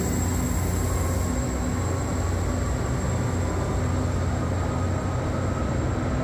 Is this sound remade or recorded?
recorded